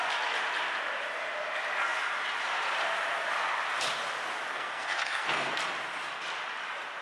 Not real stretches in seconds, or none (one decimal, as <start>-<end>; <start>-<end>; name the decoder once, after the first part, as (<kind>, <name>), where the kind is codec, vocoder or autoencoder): 4.5-5.6 (codec, SNAC)